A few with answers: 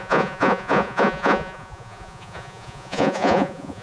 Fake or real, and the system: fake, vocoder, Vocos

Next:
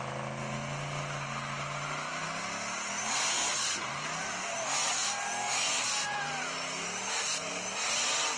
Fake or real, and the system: real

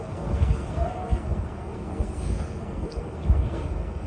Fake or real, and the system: fake, codec, SNAC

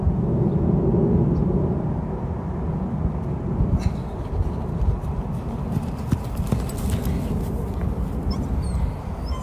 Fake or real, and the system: real